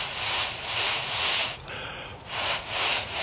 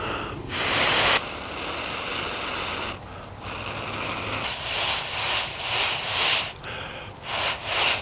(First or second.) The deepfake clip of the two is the first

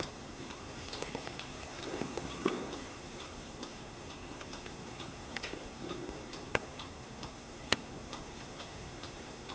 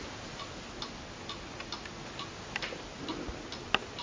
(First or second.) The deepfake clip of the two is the first